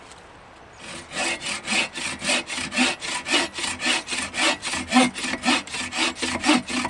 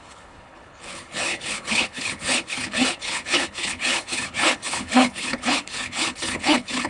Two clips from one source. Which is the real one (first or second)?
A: first